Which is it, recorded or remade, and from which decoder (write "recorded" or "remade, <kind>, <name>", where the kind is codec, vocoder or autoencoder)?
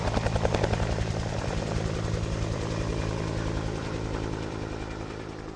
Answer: remade, vocoder, BigVGAN v2